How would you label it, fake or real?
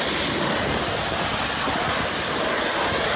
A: real